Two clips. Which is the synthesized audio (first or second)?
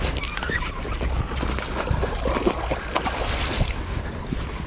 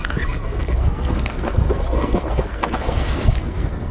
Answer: second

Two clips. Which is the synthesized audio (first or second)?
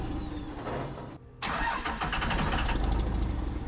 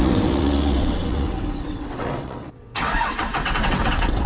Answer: second